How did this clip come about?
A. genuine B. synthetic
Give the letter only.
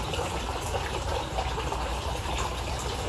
B